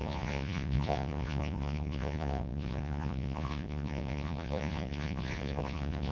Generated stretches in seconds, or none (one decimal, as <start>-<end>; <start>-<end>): 0.0-6.1